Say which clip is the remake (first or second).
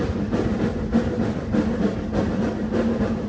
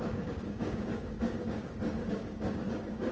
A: second